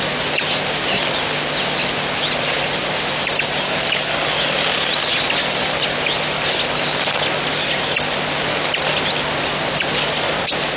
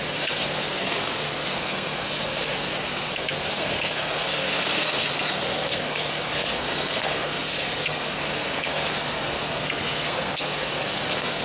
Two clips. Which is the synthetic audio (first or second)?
second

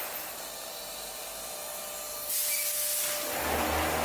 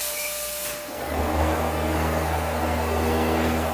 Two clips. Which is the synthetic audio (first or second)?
second